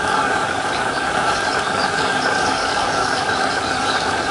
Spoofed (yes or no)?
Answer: yes